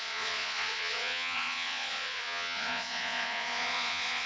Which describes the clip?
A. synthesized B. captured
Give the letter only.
A